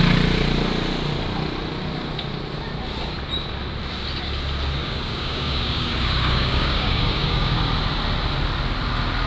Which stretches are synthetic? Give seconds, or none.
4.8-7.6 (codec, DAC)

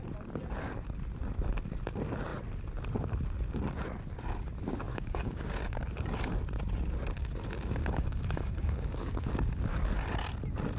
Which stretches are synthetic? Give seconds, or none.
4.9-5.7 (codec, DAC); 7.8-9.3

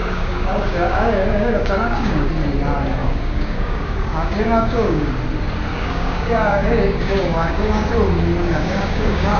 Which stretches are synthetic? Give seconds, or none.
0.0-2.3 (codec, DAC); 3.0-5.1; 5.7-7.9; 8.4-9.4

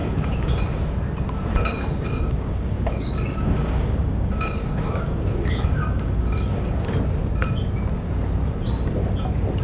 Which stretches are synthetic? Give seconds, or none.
0.0-0.5 (codec, DAC); 1.7-6.9